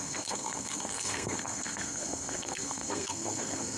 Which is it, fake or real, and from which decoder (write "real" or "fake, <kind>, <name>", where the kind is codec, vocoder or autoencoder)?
fake, codec, SNAC